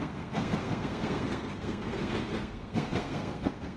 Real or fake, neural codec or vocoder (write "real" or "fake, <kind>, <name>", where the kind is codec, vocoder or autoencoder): fake, codec, SNAC